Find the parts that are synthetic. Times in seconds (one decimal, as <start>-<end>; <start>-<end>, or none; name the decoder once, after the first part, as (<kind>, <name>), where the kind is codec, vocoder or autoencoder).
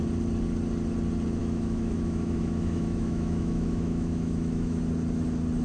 1.4-4.8 (autoencoder, DAC-VAE)